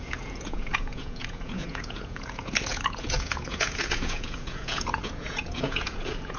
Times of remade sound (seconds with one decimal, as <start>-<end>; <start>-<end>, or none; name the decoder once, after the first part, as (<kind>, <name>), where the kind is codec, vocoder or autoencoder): 0.0-6.4 (vocoder, Vocos)